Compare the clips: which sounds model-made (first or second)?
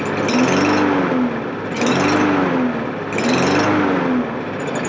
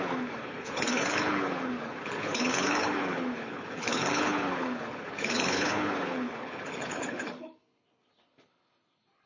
second